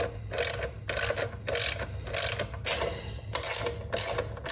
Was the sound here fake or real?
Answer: real